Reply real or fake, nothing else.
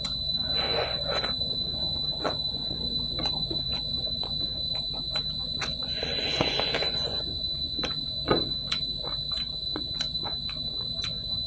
fake